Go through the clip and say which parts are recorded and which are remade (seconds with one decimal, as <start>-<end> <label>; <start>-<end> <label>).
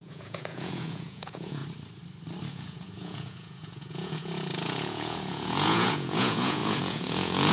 0.0-1.6 remade; 1.6-2.5 recorded; 2.5-7.5 remade